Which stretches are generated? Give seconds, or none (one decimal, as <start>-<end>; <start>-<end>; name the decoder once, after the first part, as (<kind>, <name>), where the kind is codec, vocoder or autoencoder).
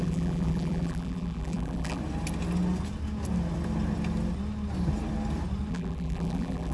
0.0-2.0 (vocoder, BigVGAN v2); 5.7-6.7